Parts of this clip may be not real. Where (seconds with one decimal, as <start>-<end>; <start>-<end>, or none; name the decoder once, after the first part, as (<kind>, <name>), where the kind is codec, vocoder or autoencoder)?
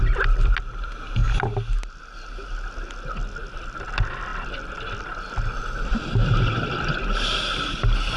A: none